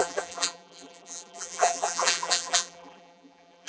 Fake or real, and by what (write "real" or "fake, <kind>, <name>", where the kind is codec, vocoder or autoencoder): fake, vocoder, BigVGAN v2